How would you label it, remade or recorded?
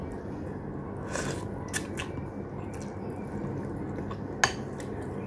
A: recorded